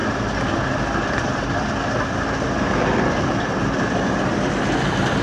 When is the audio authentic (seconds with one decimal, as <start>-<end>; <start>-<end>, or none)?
0.0-5.2